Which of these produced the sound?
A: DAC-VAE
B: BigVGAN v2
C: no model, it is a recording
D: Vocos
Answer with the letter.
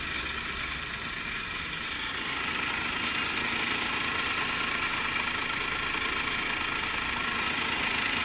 C